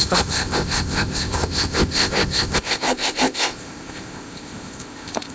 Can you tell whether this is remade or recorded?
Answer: remade